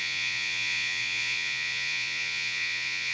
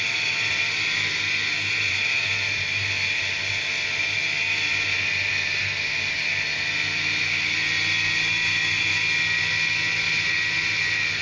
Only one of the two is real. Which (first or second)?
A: second